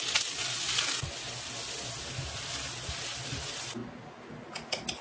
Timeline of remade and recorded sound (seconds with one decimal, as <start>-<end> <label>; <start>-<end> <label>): 0.0-5.0 recorded